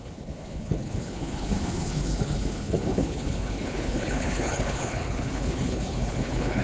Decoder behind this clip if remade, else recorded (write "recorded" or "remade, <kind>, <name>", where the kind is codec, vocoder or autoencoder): remade, codec, HILCodec